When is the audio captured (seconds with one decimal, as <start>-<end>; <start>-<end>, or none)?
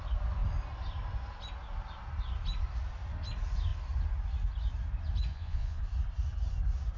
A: 0.0-5.3; 5.8-7.0